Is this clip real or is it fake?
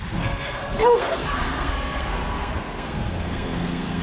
fake